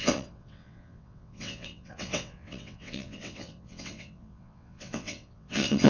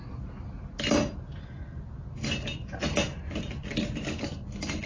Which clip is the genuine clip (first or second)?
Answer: second